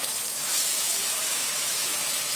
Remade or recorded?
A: remade